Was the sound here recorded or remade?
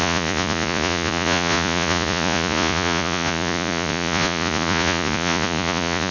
remade